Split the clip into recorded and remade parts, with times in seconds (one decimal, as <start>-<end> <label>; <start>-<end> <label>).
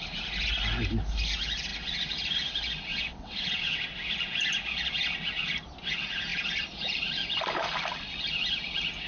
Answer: 0.0-2.9 recorded; 2.9-3.8 remade; 3.8-9.1 recorded